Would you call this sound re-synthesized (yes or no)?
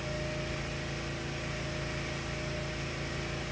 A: no